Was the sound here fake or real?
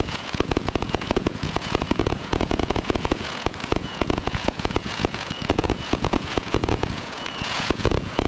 fake